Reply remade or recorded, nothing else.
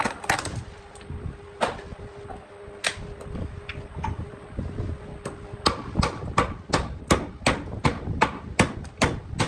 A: recorded